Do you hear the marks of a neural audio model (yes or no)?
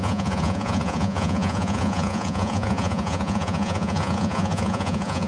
yes